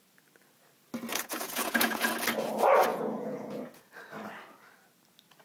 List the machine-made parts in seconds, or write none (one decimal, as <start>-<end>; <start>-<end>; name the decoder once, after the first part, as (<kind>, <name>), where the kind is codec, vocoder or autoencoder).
1.1-2.1 (vocoder, Vocos); 2.9-3.9